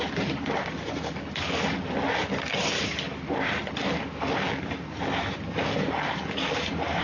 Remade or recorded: recorded